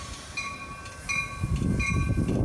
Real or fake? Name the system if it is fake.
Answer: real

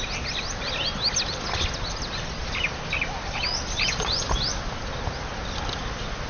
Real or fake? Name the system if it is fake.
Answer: real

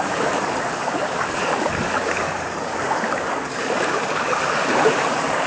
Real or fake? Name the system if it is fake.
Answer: fake, codec, DAC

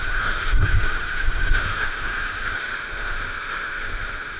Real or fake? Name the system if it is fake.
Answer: fake, autoencoder, DAC-VAE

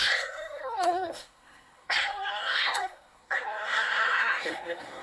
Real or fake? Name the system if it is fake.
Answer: fake, codec, SNAC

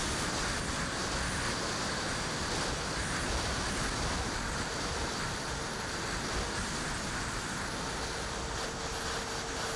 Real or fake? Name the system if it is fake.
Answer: real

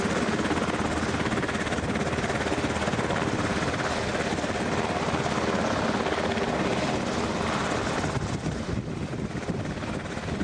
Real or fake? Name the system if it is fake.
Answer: real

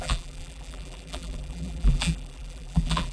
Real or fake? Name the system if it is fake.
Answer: fake, vocoder, BigVGAN v2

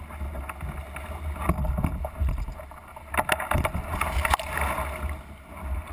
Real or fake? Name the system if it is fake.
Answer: real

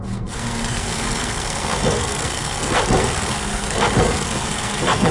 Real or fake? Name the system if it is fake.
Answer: fake, codec, SNAC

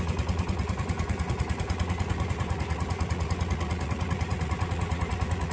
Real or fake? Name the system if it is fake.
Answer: fake, vocoder, Vocos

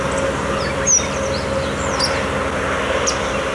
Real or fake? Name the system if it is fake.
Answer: real